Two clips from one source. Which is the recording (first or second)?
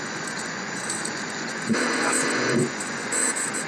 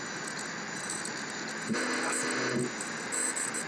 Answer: second